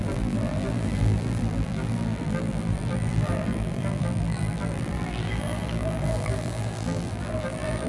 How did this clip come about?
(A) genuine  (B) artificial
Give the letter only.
B